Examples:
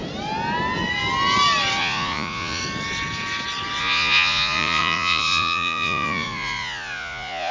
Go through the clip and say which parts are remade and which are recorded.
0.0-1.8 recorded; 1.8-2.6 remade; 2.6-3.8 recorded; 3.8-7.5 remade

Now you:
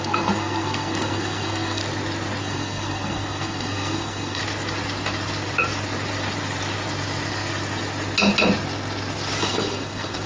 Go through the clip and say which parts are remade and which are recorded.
0.0-1.8 remade; 1.8-2.4 recorded; 2.4-4.4 remade; 4.4-9.4 recorded; 9.4-10.3 remade